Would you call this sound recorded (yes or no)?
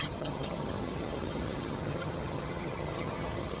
no